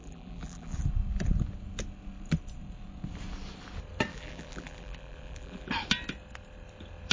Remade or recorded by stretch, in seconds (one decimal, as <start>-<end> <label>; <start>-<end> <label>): 0.0-0.8 remade; 0.8-4.1 recorded; 4.1-5.7 remade; 5.7-7.1 recorded